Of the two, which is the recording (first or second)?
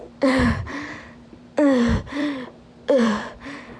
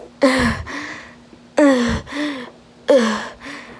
second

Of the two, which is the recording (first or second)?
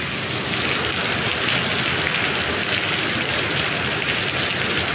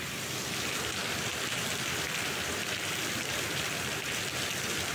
first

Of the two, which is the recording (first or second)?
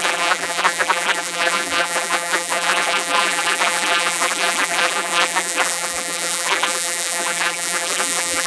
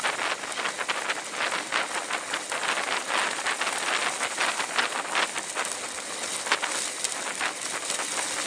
second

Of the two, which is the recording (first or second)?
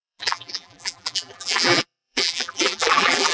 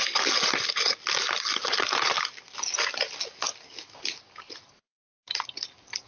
second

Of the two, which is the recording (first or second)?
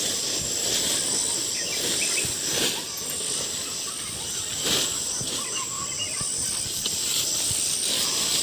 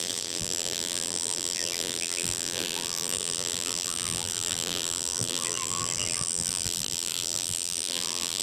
first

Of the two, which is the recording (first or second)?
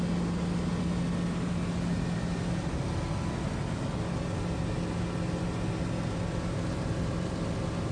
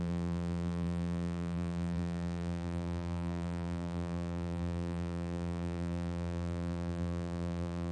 first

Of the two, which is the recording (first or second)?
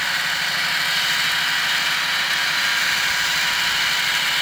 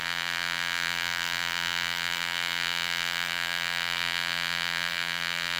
first